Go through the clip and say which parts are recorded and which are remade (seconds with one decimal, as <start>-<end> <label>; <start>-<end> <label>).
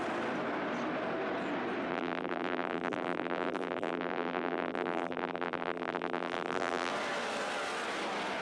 0.0-1.9 recorded; 1.9-6.9 remade; 6.9-8.4 recorded